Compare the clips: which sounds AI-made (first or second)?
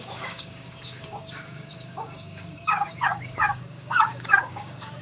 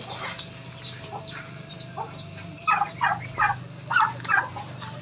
first